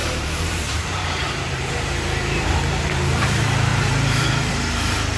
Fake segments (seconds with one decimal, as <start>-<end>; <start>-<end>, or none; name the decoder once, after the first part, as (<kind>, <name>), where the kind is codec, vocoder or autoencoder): 0.0-3.0 (vocoder, BigVGAN v2); 3.7-4.3